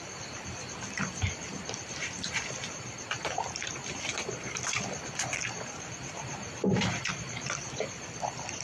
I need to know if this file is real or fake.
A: fake